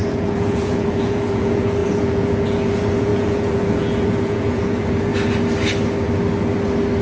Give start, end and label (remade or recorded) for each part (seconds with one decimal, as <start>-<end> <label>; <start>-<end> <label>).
0.0-5.1 remade; 5.1-7.0 recorded